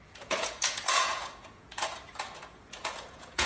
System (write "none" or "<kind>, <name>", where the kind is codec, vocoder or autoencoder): vocoder, Vocos